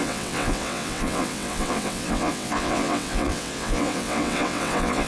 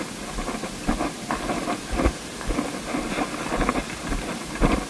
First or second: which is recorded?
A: second